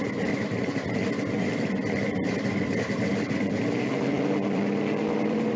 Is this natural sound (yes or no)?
no